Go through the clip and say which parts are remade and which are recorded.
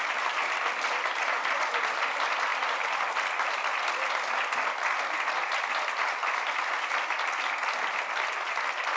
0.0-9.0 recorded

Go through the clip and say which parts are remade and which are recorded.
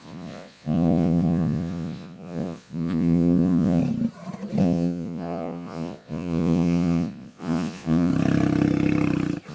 0.0-3.8 remade; 3.8-4.6 recorded; 4.6-8.1 remade; 8.1-9.5 recorded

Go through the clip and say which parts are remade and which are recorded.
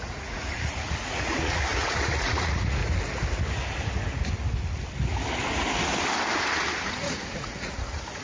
0.0-2.8 remade; 2.8-6.9 recorded; 6.9-8.2 remade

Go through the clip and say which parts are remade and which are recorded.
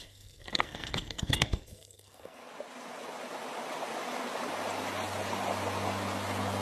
0.0-2.4 remade; 2.4-6.6 recorded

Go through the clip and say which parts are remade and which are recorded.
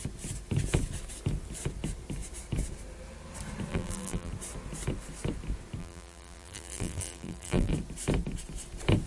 0.0-3.7 recorded; 3.7-4.3 remade; 4.3-5.8 recorded; 5.8-7.7 remade; 7.7-9.1 recorded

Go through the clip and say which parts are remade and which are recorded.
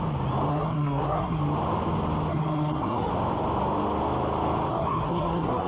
0.0-0.5 recorded; 0.5-1.4 remade; 1.4-2.3 recorded; 2.3-3.1 remade; 3.1-4.7 recorded; 4.7-5.7 remade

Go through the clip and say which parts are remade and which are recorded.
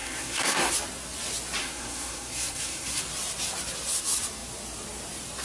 0.0-0.7 remade; 0.7-1.6 recorded; 1.6-3.0 remade; 3.0-5.4 recorded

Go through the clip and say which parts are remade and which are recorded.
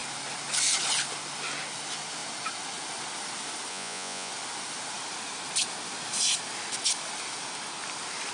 0.0-3.7 recorded; 3.7-4.3 remade; 4.3-8.3 recorded